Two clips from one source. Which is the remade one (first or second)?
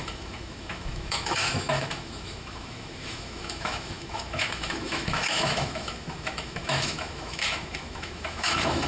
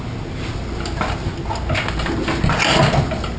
first